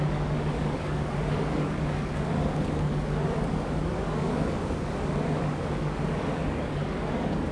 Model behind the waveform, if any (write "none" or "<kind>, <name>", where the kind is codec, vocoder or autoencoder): codec, DAC